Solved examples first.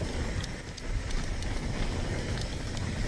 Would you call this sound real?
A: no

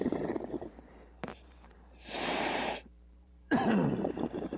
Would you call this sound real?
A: no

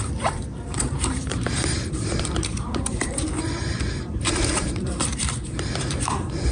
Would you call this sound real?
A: no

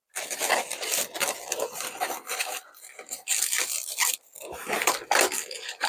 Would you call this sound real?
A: no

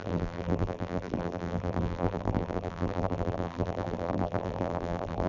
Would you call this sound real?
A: no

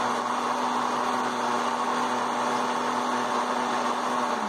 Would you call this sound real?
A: yes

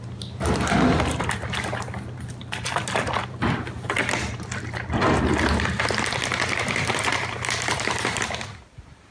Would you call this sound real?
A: no